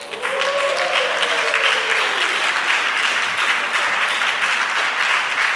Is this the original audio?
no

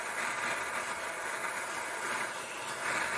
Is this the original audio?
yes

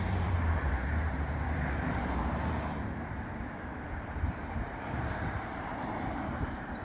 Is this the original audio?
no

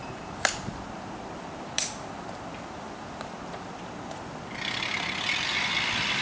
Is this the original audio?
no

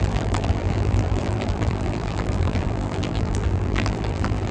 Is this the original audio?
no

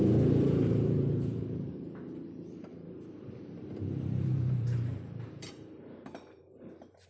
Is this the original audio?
no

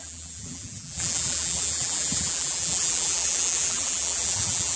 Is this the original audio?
no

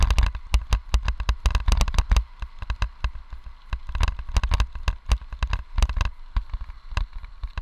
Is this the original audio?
yes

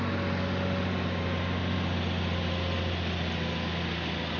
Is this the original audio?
yes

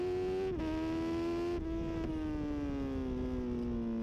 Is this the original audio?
yes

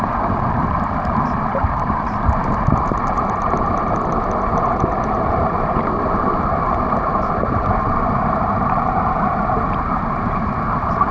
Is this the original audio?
no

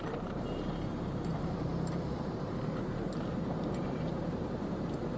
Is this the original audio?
no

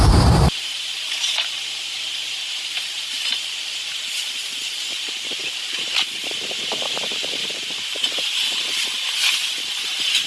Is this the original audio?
no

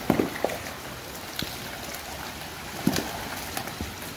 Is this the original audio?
yes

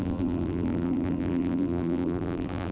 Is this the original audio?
no